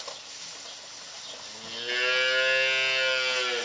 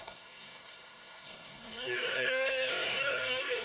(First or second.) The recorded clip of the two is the first